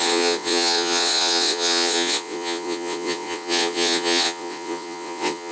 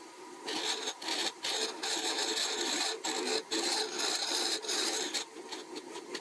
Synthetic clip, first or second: first